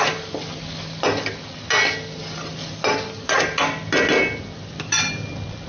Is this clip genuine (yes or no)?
yes